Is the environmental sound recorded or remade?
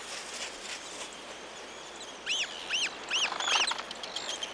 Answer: recorded